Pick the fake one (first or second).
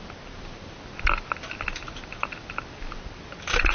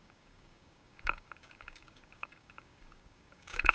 second